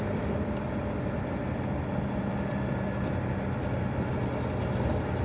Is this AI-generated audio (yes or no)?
no